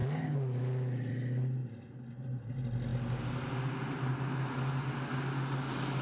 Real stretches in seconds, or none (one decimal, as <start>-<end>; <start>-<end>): 0.0-6.0